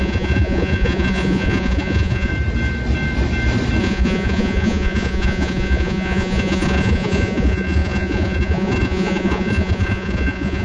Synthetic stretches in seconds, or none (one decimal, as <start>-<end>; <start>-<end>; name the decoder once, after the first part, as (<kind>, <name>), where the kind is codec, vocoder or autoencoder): 0.0-2.3 (vocoder, Vocos); 3.8-10.6